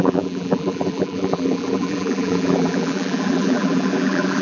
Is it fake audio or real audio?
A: fake